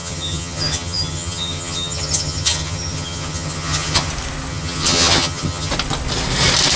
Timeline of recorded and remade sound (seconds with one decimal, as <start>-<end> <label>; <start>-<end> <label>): 0.0-4.1 remade; 4.1-4.5 recorded; 4.5-5.7 remade; 5.7-6.8 recorded